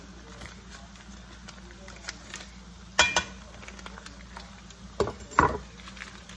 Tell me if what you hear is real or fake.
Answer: real